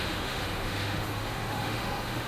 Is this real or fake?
fake